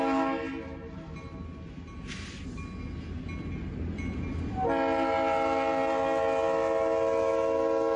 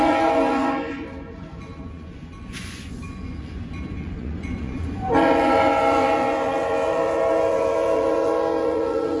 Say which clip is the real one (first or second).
first